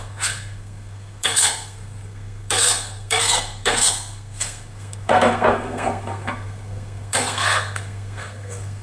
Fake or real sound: fake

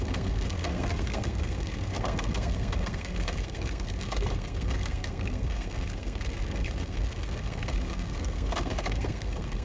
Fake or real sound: fake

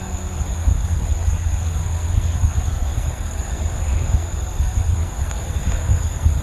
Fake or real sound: fake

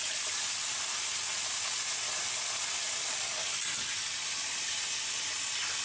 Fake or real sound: real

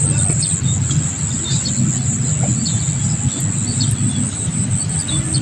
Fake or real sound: real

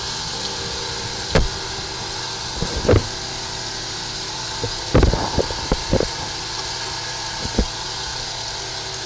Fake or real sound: real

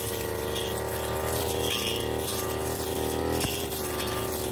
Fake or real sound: real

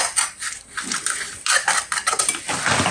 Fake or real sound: real